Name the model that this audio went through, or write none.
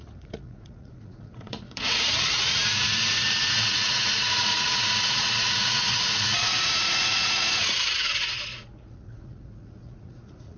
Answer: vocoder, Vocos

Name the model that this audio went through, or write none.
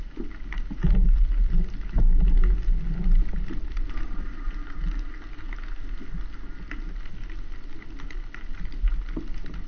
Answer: none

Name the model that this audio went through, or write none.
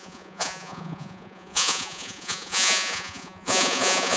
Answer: vocoder, Vocos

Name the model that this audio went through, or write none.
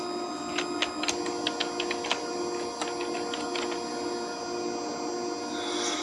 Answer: none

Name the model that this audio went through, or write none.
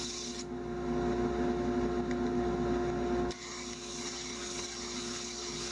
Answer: none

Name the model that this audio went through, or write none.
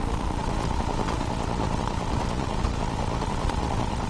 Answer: vocoder, Vocos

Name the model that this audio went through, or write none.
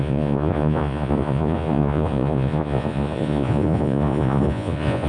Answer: vocoder, Vocos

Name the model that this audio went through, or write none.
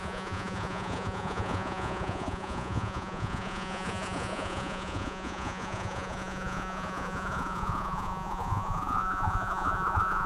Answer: vocoder, Vocos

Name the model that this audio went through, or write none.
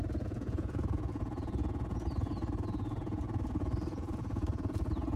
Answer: vocoder, Vocos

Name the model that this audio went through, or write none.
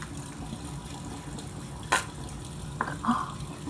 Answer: none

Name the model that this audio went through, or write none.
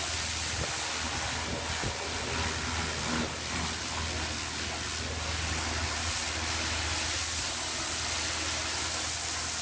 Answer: none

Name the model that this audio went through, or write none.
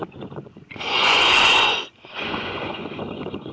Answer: vocoder, Vocos